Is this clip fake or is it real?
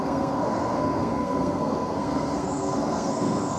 fake